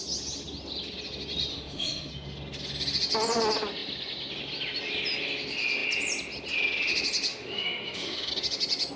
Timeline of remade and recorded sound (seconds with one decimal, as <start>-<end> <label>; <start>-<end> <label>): 0.0-1.5 recorded; 1.5-2.1 remade; 2.1-7.3 recorded; 7.3-8.3 remade; 8.3-9.0 recorded